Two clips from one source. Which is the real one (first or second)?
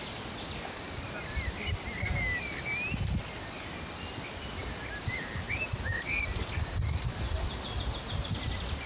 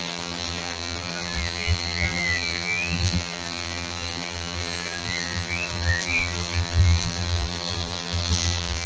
first